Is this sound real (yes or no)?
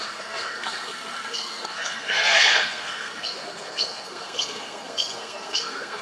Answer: no